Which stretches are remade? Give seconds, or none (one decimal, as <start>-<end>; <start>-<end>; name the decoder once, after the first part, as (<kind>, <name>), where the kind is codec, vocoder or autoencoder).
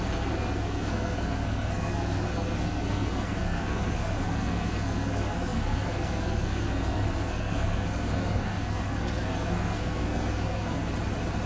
0.0-10.8 (codec, SNAC)